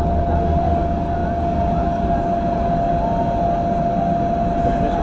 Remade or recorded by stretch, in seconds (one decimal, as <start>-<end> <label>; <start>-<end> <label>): 0.0-5.0 recorded